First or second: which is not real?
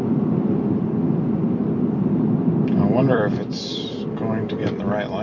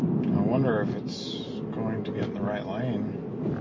first